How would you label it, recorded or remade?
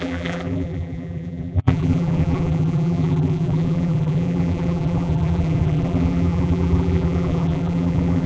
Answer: remade